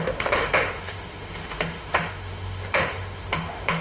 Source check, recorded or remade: remade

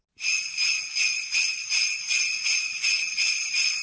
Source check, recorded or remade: recorded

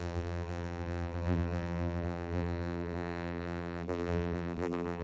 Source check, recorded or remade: remade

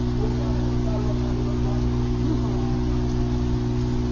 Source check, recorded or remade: recorded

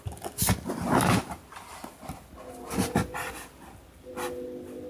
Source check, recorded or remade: recorded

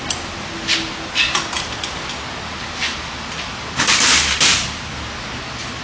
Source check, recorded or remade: recorded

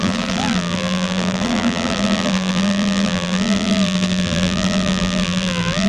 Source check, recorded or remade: remade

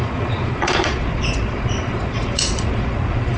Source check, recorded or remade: remade